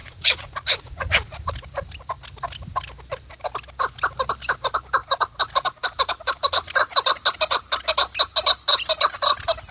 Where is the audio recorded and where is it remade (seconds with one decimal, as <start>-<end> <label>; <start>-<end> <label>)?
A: 0.0-1.5 remade; 1.5-9.7 recorded